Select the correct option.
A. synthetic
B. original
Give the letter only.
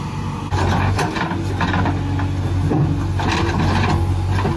B